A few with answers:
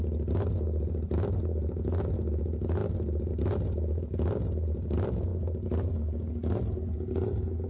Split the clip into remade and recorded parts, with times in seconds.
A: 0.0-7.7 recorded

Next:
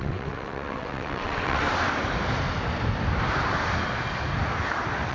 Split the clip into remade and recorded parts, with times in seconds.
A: 0.0-1.6 remade; 1.6-5.1 recorded

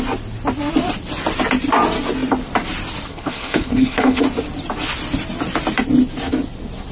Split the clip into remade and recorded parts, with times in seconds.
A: 0.0-3.1 recorded; 3.1-4.2 remade; 4.2-6.9 recorded

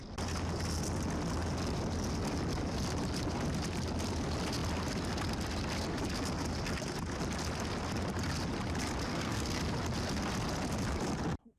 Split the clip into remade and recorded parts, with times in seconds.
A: 0.0-9.1 recorded; 9.1-9.6 remade; 9.6-11.6 recorded